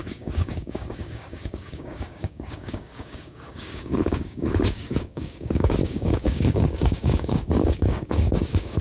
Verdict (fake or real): fake